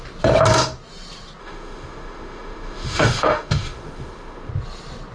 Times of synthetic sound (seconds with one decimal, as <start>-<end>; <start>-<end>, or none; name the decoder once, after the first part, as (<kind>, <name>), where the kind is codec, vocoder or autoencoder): 1.4-4.5 (autoencoder, DAC-VAE)